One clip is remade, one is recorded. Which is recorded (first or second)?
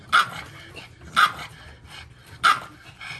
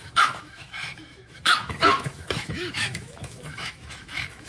first